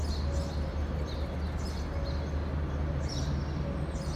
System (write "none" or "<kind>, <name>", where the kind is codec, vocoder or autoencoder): none